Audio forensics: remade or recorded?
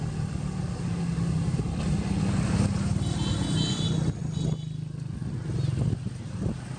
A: recorded